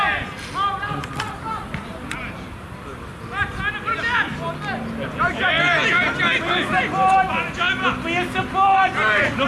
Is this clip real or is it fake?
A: real